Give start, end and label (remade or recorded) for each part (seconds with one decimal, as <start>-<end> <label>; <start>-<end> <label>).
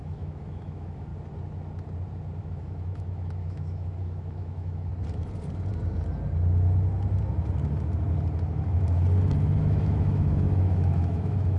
0.0-1.1 remade; 1.1-2.4 recorded; 2.4-4.9 remade; 4.9-9.6 recorded; 9.6-11.6 remade